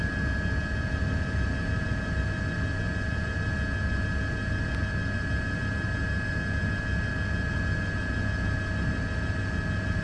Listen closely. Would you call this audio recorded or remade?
recorded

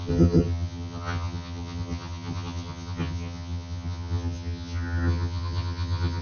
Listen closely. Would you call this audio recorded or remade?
remade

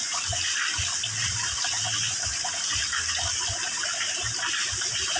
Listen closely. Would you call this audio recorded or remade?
recorded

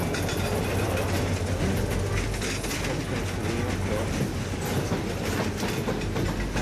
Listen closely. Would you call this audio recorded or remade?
recorded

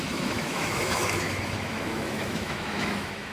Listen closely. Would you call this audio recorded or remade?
remade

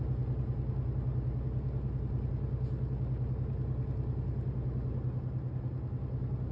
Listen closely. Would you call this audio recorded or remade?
recorded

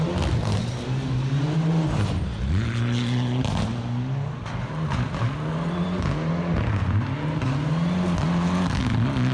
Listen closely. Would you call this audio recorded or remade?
recorded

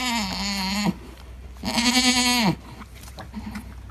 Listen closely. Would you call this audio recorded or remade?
recorded